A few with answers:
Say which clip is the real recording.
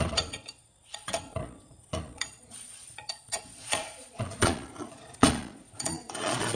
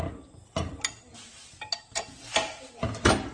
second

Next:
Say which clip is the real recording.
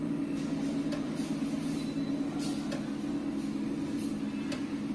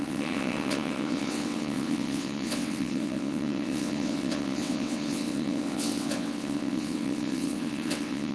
first